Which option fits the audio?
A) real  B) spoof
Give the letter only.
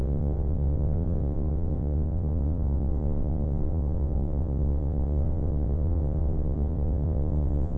B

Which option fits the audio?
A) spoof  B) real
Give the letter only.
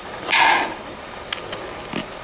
B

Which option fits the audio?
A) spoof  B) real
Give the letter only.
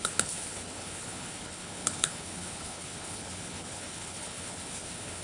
A